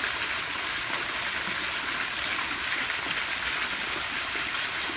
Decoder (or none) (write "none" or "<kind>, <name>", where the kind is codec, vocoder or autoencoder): none